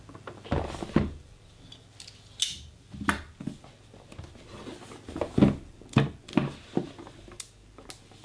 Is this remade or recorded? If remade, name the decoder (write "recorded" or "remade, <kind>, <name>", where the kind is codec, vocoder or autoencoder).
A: recorded